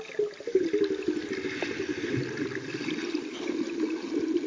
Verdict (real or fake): real